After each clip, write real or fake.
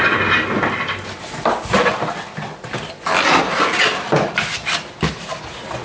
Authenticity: real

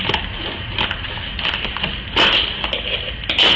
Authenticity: real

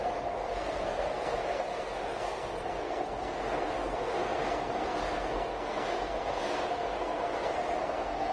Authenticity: fake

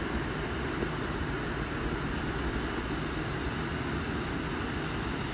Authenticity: real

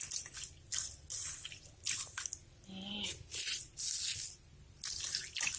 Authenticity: real